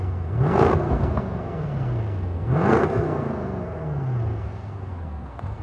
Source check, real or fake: fake